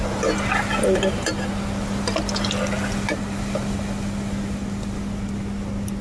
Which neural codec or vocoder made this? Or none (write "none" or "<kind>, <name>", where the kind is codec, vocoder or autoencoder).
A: none